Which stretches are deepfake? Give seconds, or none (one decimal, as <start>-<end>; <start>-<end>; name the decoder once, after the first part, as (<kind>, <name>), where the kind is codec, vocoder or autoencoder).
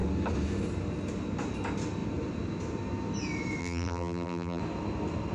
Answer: 3.6-4.6 (vocoder, BigVGAN v2)